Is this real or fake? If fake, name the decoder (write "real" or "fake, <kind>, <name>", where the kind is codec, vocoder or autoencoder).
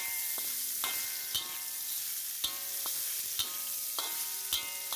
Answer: real